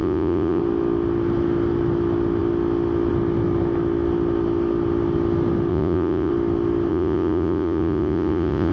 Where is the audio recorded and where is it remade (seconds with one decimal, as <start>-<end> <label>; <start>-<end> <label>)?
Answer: 0.0-0.6 remade; 0.6-5.7 recorded; 5.7-6.3 remade; 6.3-6.9 recorded; 6.9-8.7 remade